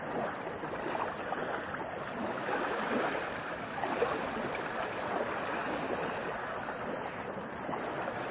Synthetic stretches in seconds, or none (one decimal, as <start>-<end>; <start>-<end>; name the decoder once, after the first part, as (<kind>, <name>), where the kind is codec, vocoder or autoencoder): 2.2-2.8 (autoencoder, DAC-VAE)